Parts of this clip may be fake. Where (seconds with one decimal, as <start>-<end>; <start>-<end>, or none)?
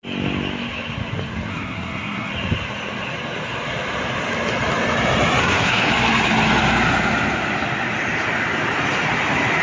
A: 1.5-2.3; 5.4-5.9